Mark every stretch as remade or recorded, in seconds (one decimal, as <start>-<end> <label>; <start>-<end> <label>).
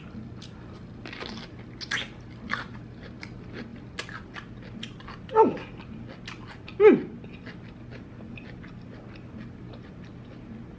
0.0-10.8 recorded